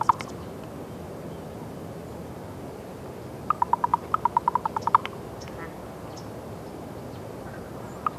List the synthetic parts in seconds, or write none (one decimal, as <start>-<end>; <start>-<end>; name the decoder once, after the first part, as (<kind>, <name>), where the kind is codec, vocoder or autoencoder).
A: 0.0-3.9 (vocoder, BigVGAN v2); 6.7-8.2